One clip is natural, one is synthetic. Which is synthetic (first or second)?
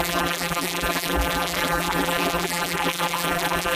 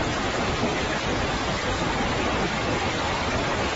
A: first